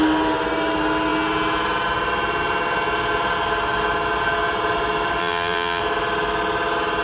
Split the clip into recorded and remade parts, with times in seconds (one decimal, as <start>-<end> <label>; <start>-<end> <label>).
0.0-5.2 recorded; 5.2-5.8 remade; 5.8-7.0 recorded